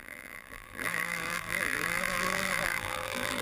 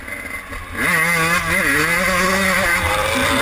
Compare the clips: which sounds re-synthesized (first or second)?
first